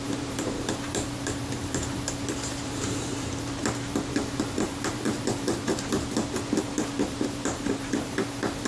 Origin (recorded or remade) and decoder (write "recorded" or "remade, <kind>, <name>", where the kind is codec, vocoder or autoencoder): remade, vocoder, BigVGAN v2